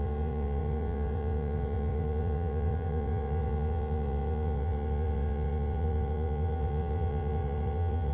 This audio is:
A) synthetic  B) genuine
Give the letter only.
A